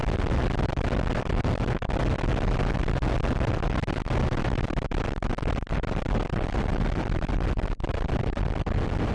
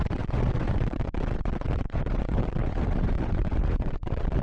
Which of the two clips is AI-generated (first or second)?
second